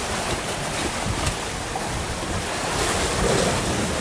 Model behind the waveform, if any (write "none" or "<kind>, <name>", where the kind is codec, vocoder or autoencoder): none